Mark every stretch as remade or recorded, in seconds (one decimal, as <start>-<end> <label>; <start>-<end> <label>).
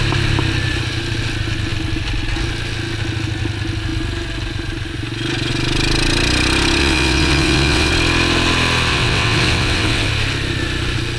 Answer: 0.0-6.8 recorded; 6.8-7.9 remade; 7.9-8.9 recorded; 8.9-10.1 remade; 10.1-11.2 recorded